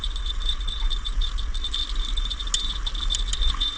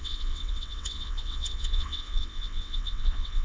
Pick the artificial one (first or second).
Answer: second